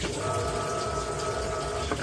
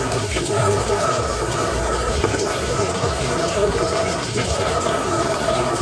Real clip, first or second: first